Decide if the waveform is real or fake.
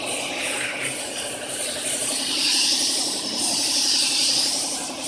fake